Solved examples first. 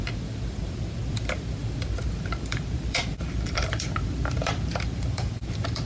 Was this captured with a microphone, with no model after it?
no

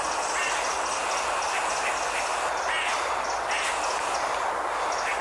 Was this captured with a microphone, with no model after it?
yes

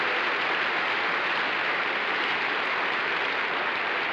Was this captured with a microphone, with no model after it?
yes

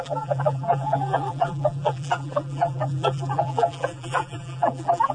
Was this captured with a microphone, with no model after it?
no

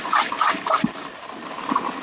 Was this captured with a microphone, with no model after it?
yes